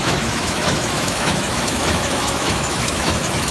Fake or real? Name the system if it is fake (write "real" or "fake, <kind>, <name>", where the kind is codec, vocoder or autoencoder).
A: fake, autoencoder, DAC-VAE